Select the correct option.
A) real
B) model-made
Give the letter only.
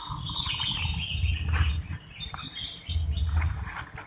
A